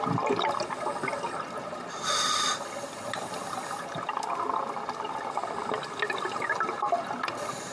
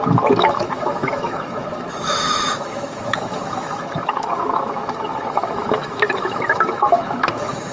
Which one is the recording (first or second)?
first